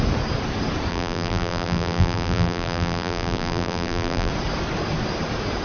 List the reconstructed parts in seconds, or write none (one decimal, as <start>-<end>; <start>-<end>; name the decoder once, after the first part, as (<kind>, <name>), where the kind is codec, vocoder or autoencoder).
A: 0.9-4.3 (vocoder, BigVGAN v2)